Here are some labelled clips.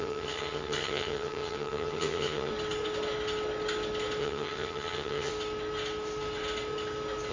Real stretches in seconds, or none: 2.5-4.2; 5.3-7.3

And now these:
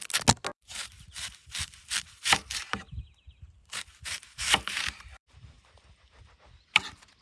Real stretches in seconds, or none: 0.0-0.5; 3.0-3.6; 6.3-7.2

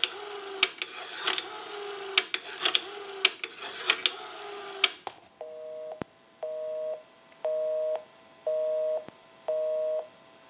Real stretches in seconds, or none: 0.0-10.5

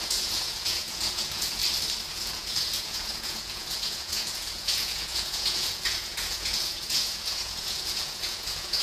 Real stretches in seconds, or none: 1.6-2.1